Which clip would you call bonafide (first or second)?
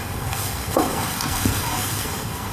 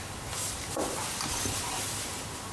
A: second